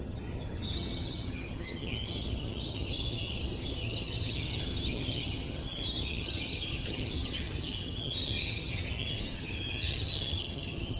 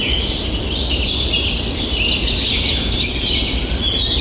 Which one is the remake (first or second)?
first